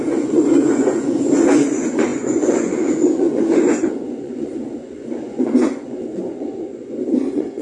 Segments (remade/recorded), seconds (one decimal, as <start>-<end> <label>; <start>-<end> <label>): 0.0-7.6 remade